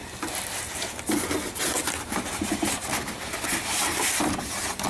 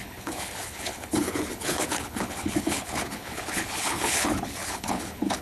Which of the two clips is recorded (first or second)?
first